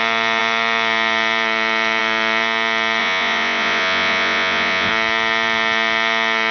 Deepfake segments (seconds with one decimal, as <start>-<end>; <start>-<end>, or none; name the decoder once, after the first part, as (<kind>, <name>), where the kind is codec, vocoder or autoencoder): 3.0-4.9 (vocoder, Vocos)